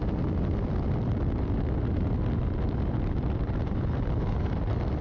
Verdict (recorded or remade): recorded